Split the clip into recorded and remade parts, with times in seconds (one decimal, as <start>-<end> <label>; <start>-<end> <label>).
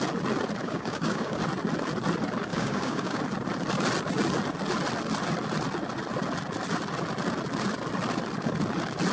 0.0-0.6 recorded; 0.6-1.4 remade; 1.4-2.5 recorded; 2.5-3.2 remade; 3.2-9.1 recorded